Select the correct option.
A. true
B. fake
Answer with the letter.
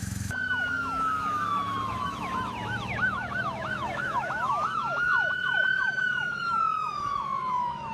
B